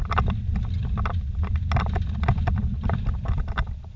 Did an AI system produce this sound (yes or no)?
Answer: no